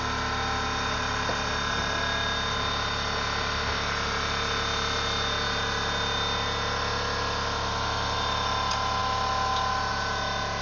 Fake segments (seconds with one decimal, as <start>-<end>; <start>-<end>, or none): none